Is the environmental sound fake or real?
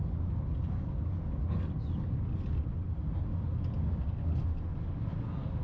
real